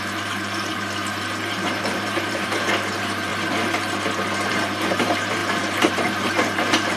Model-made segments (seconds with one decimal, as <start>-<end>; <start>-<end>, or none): 0.0-3.3; 4.5-7.0